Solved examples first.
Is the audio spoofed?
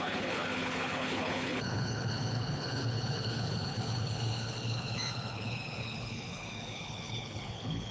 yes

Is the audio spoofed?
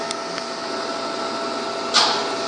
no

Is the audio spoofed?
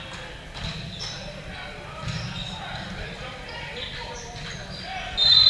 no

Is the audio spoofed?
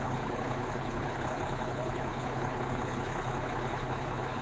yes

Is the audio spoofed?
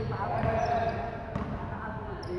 no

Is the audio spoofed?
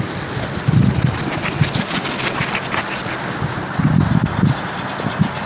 no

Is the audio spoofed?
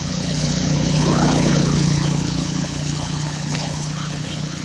yes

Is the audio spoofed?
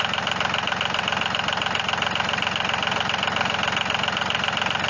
no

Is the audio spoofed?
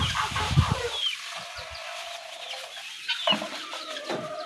no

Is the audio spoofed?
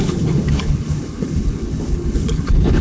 yes